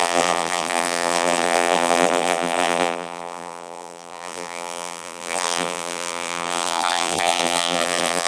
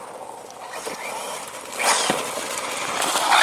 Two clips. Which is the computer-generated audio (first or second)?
first